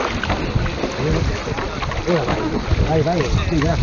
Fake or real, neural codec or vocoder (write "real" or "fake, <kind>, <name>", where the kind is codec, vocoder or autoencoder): real